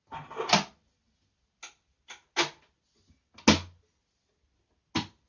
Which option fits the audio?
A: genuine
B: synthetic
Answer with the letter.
A